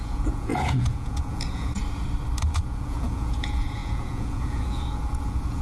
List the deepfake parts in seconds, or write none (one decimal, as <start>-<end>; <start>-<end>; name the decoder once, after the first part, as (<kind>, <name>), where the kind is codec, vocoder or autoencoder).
0.0-1.8 (vocoder, Vocos); 2.4-5.6